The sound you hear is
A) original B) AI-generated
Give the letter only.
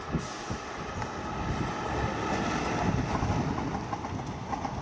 A